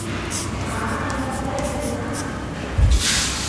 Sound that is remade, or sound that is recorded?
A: remade